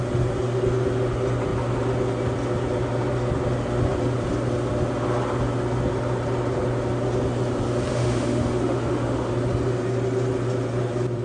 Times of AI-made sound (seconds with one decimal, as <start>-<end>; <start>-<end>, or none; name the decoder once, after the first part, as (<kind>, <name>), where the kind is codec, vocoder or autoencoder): 7.9-9.3 (autoencoder, DAC-VAE)